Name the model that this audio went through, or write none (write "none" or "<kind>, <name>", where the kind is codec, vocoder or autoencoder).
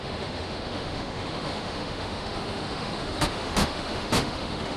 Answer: autoencoder, DAC-VAE